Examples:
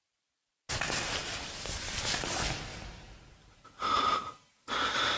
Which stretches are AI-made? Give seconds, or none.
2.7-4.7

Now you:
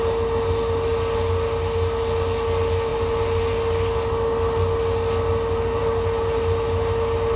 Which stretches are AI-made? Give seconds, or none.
none

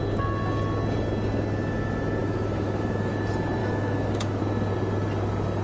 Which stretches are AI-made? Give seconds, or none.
2.2-3.1; 3.6-4.4

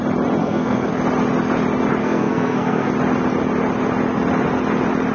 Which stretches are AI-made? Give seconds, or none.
0.4-0.9; 2.0-2.9

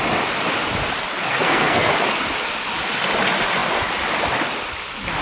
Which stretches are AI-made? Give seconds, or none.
1.2-1.9

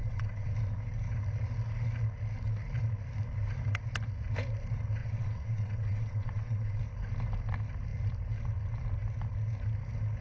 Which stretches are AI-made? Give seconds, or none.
0.0-0.5; 5.0-6.8